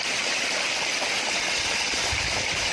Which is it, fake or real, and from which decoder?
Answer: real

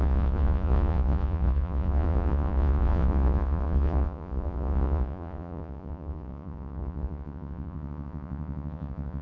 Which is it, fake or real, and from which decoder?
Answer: fake, vocoder, Vocos